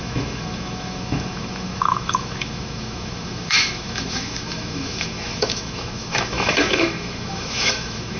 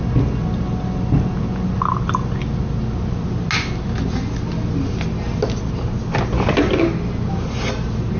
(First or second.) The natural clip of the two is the second